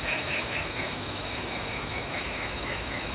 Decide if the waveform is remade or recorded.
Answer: remade